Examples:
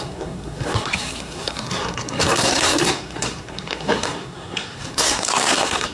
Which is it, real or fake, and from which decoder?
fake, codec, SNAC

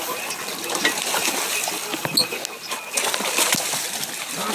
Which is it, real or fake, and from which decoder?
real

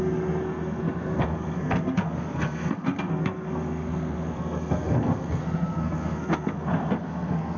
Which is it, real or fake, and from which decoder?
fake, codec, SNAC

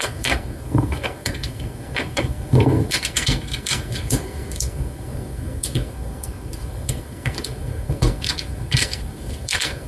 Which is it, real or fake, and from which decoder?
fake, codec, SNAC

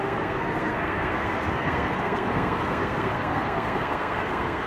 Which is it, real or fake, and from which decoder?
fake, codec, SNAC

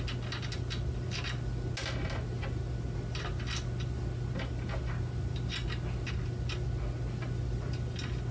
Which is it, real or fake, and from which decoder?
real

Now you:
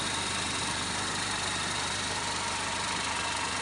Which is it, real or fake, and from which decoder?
real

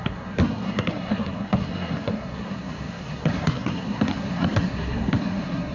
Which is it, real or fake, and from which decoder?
fake, codec, SNAC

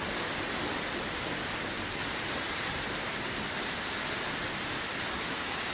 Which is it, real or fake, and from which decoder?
real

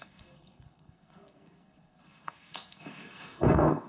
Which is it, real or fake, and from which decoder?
fake, codec, SNAC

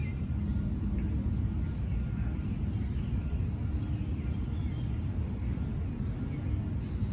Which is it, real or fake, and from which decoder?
real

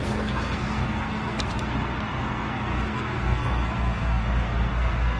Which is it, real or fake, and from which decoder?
fake, codec, SNAC